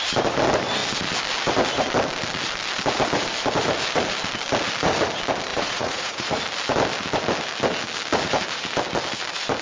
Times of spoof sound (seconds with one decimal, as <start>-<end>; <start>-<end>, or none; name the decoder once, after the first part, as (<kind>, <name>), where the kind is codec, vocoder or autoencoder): 5.5-6.4 (vocoder, Vocos)